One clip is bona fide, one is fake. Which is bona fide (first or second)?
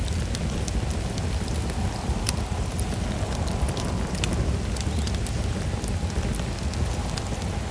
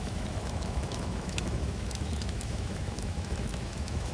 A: first